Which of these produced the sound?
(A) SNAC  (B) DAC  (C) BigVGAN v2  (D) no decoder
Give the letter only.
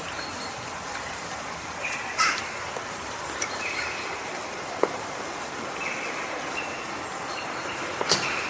C